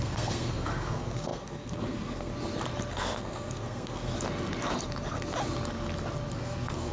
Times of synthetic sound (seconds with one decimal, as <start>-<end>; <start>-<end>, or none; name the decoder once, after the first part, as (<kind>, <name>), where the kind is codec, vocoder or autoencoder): 0.0-2.3 (codec, SNAC); 2.9-4.1; 6.3-6.9